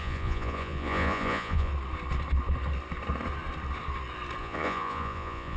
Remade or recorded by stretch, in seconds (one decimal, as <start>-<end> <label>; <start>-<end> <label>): 0.0-1.7 remade; 1.7-4.4 recorded; 4.4-5.6 remade